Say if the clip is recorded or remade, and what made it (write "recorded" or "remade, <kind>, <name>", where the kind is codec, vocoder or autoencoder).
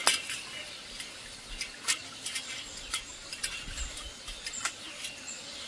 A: recorded